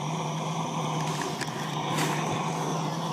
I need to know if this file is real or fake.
real